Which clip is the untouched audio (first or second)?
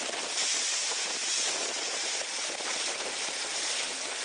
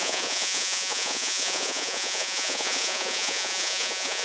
first